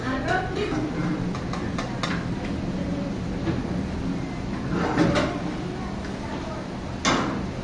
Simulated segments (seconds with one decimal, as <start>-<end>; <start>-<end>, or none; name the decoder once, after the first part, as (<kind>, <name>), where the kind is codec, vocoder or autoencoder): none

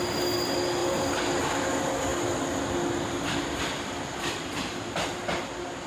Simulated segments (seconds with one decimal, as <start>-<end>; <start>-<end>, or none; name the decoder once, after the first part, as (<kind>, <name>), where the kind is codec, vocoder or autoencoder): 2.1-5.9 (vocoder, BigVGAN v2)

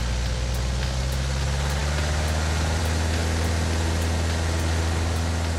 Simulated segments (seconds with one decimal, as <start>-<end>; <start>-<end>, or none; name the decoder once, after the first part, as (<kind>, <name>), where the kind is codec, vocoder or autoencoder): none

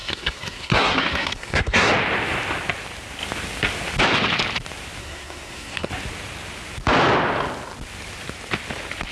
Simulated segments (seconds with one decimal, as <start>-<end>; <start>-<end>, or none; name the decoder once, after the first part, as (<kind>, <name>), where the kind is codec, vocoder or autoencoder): 0.0-1.9 (codec, SNAC); 5.0-5.9